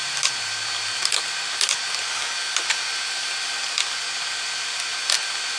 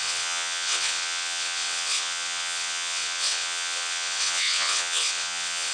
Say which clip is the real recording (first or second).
first